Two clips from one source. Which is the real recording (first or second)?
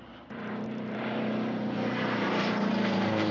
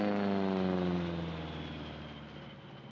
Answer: second